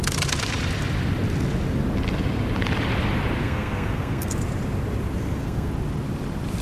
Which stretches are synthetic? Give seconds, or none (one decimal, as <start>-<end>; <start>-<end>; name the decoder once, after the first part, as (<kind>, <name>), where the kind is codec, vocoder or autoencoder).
3.4-4.3 (codec, SNAC); 5.2-5.7